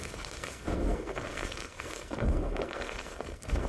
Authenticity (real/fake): fake